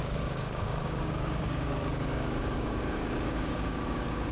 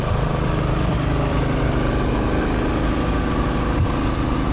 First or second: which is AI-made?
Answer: first